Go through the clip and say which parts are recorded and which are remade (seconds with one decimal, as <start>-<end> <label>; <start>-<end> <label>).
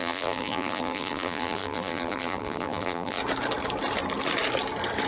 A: 0.0-3.2 remade; 3.2-5.1 recorded